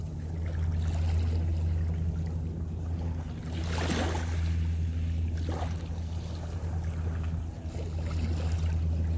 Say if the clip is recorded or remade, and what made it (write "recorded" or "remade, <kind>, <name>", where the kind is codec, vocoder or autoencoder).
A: recorded